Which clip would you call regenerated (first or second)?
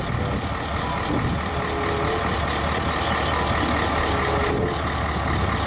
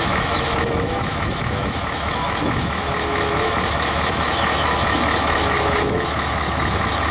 second